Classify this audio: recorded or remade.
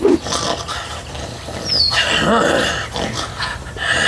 recorded